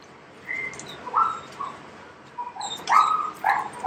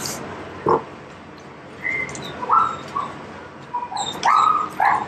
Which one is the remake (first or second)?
first